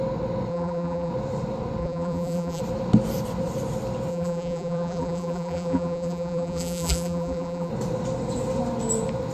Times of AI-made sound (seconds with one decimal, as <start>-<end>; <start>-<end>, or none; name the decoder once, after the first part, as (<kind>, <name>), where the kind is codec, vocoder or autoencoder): 0.5-1.1 (vocoder, BigVGAN v2); 1.8-2.6; 4.1-7.7